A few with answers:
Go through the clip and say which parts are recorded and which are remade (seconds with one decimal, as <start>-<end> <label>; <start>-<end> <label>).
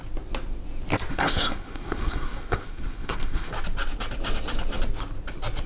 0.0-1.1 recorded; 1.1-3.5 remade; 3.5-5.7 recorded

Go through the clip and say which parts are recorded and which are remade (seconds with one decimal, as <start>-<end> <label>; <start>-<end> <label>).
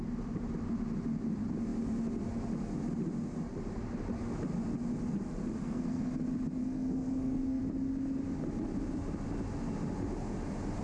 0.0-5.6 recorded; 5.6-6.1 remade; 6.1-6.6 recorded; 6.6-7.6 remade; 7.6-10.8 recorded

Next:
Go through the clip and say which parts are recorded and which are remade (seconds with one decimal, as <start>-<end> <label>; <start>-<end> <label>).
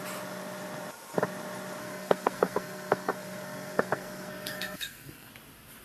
0.0-1.8 recorded; 1.8-5.3 remade; 5.3-5.8 recorded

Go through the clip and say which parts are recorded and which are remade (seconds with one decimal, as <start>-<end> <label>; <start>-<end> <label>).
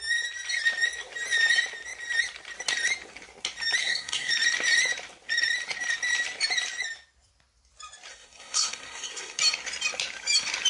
0.0-3.8 recorded; 3.8-4.3 remade; 4.3-8.1 recorded; 8.1-9.4 remade; 9.4-10.7 recorded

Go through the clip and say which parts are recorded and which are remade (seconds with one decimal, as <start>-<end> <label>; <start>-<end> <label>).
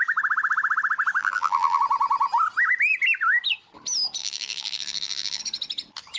0.0-1.2 recorded; 1.2-1.8 remade; 1.8-4.2 recorded; 4.2-5.4 remade; 5.4-6.2 recorded